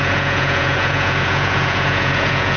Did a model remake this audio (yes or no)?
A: yes